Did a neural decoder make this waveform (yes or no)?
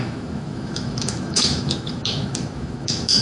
yes